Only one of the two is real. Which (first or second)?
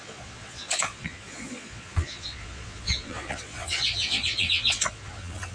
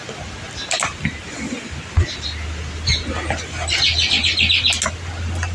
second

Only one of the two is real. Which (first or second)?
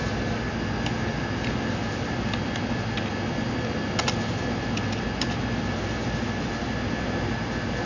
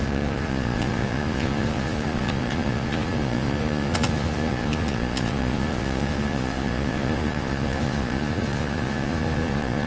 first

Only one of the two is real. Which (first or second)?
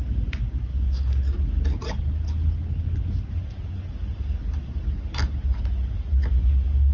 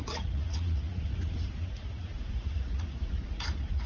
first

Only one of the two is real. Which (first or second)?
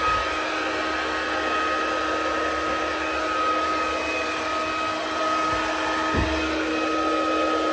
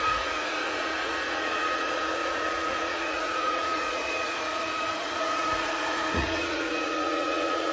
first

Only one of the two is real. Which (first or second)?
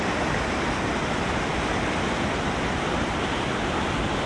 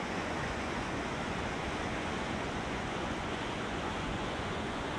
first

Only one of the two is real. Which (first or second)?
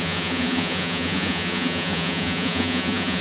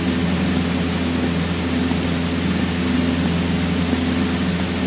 second